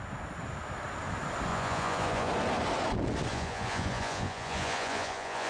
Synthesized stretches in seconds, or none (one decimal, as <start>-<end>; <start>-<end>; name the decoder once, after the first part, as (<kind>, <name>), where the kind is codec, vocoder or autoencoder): 1.5-2.3 (vocoder, Vocos); 3.3-5.5